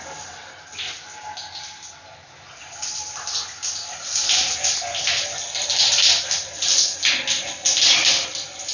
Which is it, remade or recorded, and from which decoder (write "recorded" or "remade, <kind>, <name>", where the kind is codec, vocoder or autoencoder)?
recorded